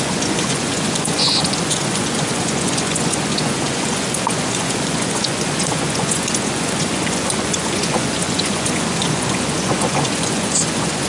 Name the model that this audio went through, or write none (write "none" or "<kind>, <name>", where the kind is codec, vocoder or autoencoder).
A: vocoder, Vocos